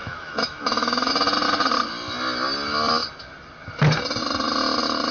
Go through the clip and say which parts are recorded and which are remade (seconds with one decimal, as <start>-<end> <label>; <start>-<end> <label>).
0.0-1.1 remade; 1.1-5.1 recorded